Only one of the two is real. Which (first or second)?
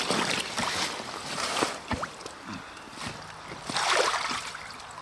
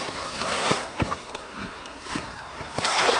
first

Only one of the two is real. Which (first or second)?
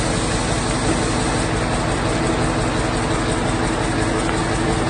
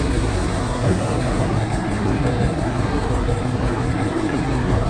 first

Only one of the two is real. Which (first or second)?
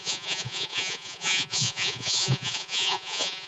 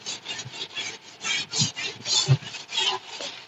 second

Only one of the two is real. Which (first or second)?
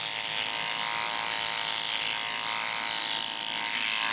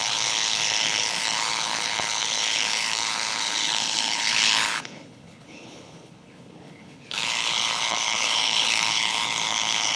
first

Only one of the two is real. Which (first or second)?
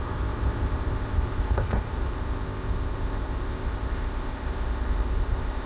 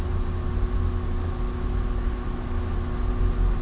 second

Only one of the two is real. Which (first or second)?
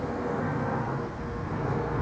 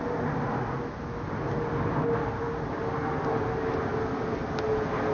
second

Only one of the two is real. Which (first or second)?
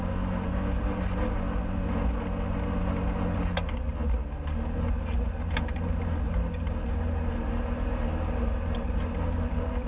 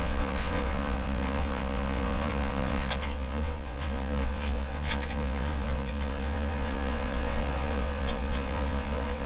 first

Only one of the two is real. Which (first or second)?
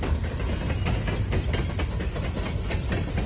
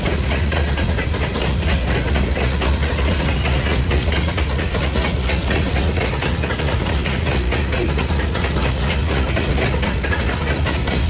first